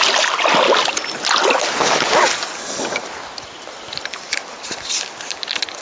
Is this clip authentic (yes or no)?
yes